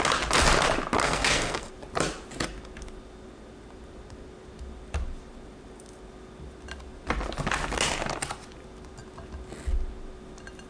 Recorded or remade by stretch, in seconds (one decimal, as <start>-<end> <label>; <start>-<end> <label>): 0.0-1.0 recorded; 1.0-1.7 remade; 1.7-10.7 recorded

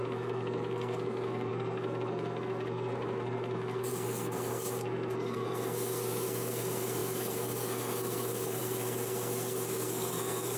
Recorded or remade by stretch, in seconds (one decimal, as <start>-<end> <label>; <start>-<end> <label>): 0.0-10.6 remade

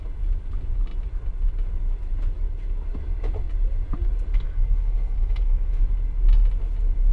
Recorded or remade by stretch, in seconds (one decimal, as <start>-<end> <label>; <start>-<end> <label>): 0.0-4.3 recorded; 4.3-5.8 remade; 5.8-7.1 recorded

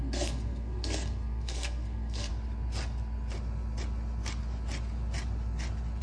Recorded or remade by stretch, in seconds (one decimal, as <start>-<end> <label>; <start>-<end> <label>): 0.0-2.3 remade; 2.3-6.0 recorded

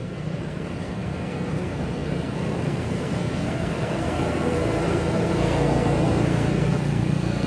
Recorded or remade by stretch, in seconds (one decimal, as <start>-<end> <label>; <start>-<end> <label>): 0.0-7.5 remade

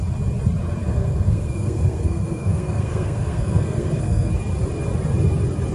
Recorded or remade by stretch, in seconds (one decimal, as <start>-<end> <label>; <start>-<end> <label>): 0.0-0.9 recorded; 0.9-4.3 remade; 4.3-5.7 recorded